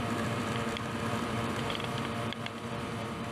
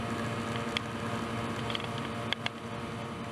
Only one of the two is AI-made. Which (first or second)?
first